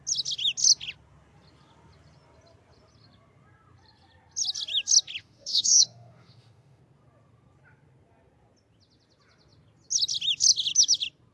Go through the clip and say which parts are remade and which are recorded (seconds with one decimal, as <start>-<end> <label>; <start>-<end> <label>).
0.0-5.2 recorded; 5.2-6.8 remade; 6.8-11.3 recorded